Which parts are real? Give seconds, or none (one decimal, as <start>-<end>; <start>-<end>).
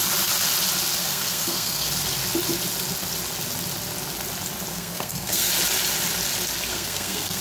0.0-1.0; 1.9-4.7; 5.5-6.7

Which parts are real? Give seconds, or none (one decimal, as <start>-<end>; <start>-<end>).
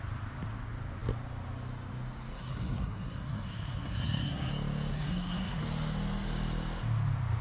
0.0-2.3; 4.5-4.9; 5.6-7.4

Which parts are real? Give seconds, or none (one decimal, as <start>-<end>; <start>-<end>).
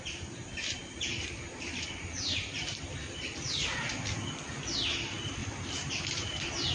0.0-0.8; 3.5-5.4; 6.0-6.7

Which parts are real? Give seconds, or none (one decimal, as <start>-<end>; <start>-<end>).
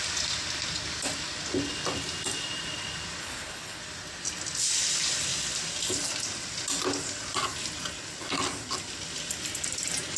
0.0-3.2; 3.8-10.2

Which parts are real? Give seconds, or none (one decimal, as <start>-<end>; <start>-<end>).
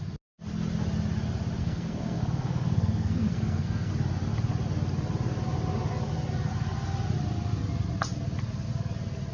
0.0-1.6; 3.9-9.3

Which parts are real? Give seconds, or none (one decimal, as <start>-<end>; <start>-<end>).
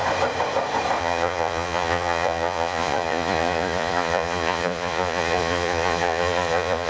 0.0-1.0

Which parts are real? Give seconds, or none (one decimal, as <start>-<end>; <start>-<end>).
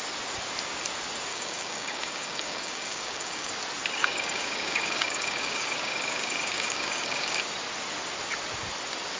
0.0-1.3; 3.5-4.0; 7.4-9.2